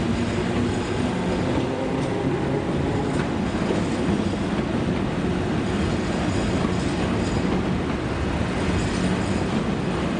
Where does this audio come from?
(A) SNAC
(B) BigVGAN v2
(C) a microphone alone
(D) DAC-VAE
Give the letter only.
C